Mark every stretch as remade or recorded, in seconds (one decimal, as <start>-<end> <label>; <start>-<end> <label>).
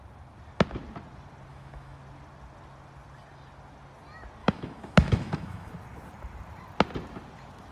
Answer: 0.0-1.5 recorded; 1.5-2.0 remade; 2.0-4.4 recorded; 4.4-5.7 remade; 5.7-7.7 recorded